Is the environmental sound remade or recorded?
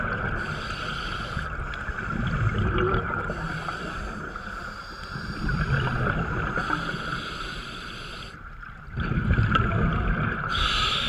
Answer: recorded